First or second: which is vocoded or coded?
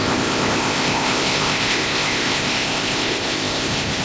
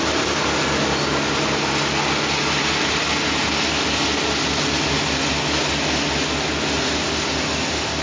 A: first